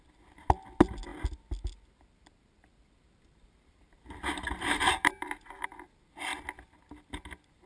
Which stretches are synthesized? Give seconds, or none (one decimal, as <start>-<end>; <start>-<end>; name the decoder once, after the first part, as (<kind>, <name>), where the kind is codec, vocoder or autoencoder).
none